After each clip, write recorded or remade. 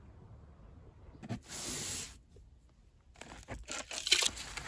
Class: recorded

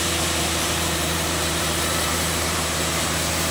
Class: remade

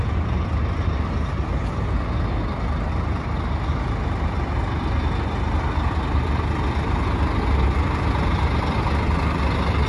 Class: recorded